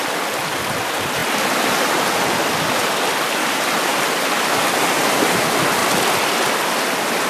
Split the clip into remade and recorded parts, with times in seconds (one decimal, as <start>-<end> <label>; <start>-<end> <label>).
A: 0.0-7.3 recorded